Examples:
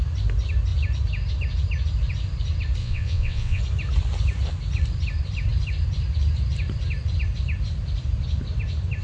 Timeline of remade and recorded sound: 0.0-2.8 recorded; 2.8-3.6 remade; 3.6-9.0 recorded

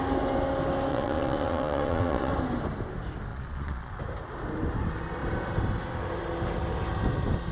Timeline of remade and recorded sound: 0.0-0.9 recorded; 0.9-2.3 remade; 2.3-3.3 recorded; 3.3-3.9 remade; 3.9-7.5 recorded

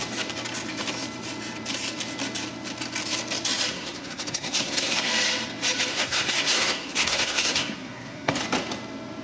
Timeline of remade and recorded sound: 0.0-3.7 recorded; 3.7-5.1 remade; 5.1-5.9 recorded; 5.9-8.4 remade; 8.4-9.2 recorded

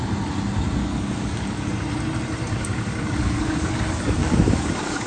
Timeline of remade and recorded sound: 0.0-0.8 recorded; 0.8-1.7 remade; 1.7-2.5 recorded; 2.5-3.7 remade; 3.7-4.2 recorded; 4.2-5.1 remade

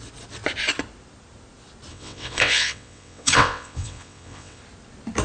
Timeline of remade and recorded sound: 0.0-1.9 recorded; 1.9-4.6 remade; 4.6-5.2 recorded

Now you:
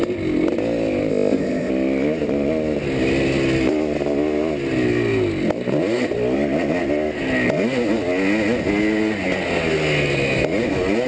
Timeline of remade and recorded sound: 0.0-1.1 recorded; 1.1-1.7 remade; 1.7-11.1 recorded